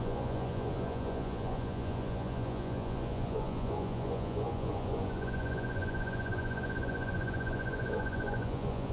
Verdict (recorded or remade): remade